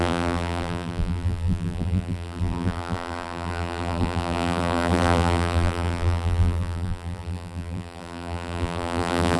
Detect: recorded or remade remade